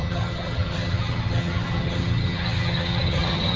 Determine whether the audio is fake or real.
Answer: fake